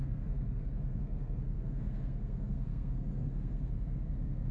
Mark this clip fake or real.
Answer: fake